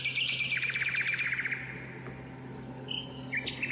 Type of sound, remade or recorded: recorded